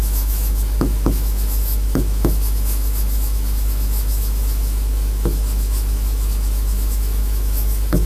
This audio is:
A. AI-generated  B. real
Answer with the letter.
A